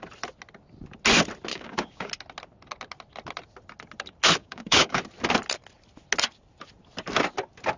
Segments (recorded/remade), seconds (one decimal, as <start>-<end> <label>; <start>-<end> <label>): 0.0-1.5 recorded; 1.5-2.1 remade; 2.1-4.4 recorded; 4.4-5.0 remade; 5.0-7.8 recorded